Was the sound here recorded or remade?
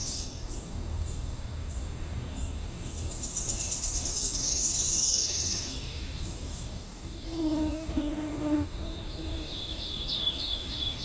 remade